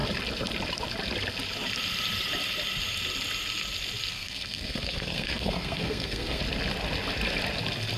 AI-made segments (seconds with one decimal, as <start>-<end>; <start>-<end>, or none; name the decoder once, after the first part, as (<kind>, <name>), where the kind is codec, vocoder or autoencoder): 4.1-6.4 (codec, SNAC)

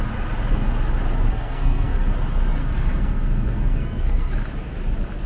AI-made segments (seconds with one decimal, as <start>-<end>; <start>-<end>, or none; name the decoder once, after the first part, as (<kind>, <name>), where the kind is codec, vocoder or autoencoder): 1.3-2.1 (codec, SNAC); 2.6-4.3

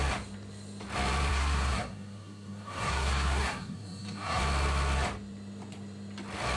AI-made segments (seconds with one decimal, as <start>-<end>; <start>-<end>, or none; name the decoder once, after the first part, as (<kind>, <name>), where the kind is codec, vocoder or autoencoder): 1.3-4.4 (codec, SNAC)

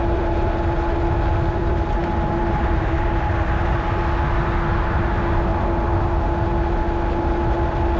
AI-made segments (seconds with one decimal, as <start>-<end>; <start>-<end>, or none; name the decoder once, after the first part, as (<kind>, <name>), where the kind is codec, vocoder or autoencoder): none

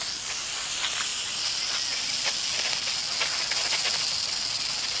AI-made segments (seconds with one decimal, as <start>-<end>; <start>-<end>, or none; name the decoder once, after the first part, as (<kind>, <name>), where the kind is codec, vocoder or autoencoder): none

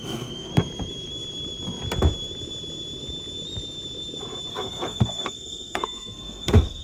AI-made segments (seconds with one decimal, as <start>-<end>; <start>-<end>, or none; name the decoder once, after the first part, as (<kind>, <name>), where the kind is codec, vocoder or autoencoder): 0.0-0.5 (codec, SNAC); 4.5-6.8

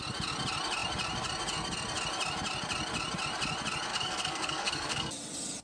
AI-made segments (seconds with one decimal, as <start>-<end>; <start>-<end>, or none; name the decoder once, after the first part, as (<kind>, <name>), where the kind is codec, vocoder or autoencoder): 3.9-5.1 (codec, SNAC)

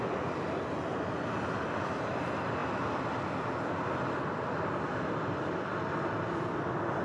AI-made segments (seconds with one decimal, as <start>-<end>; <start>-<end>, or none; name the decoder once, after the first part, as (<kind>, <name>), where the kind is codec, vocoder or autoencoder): none